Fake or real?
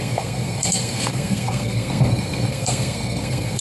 fake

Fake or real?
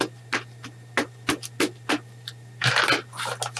real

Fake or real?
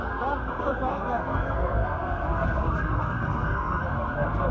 fake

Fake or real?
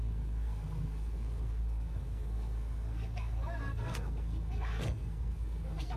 fake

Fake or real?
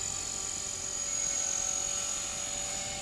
real